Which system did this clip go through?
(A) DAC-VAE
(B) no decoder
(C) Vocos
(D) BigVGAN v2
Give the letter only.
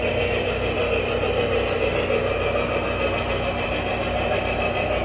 B